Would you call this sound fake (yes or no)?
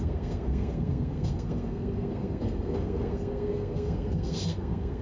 yes